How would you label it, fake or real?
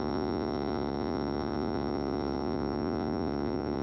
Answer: fake